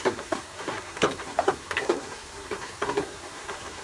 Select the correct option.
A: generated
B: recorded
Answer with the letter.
A